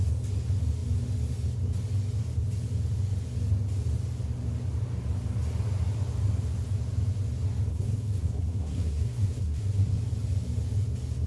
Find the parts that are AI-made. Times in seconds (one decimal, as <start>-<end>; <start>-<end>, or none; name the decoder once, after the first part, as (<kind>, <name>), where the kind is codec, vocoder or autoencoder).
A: 7.7-10.0 (codec, SNAC)